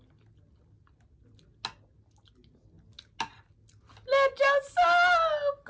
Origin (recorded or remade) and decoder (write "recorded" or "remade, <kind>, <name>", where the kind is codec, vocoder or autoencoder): recorded